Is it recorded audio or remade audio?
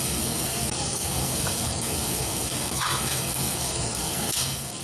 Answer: remade